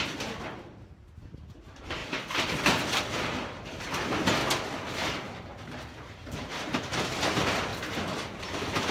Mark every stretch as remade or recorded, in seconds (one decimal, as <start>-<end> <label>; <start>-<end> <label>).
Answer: 0.0-4.4 remade; 4.4-5.1 recorded; 5.1-7.7 remade; 7.7-8.4 recorded; 8.4-8.9 remade